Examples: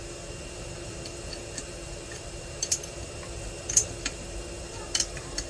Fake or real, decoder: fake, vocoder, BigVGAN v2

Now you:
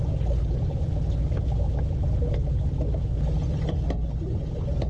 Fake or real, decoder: real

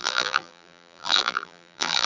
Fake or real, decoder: fake, vocoder, BigVGAN v2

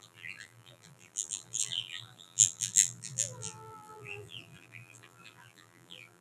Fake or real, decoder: fake, vocoder, BigVGAN v2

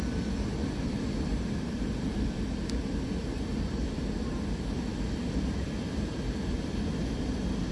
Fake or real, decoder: fake, vocoder, BigVGAN v2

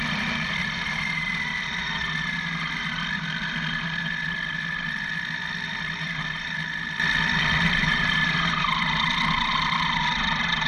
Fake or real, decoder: real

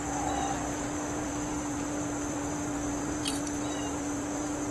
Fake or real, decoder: fake, vocoder, BigVGAN v2